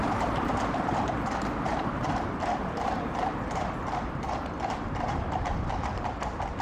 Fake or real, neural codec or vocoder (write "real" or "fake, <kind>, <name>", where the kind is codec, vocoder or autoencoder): fake, vocoder, BigVGAN v2